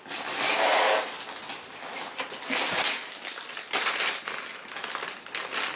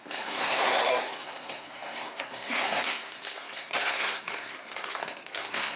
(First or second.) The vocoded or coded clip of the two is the second